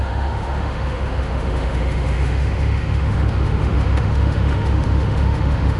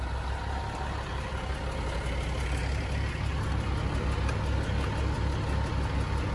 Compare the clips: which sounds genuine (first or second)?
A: second